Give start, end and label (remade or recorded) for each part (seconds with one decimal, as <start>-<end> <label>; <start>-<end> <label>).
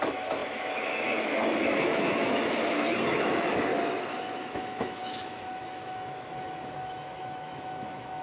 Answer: 0.0-3.7 remade; 3.7-4.4 recorded; 4.4-8.2 remade